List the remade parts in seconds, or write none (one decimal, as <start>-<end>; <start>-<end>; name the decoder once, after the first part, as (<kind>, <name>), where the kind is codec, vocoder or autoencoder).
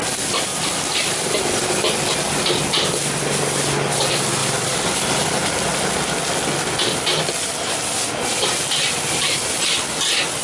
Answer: 0.5-1.4 (vocoder, BigVGAN v2); 4.4-5.2